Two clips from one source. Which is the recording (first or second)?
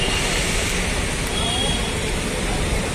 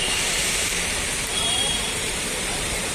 first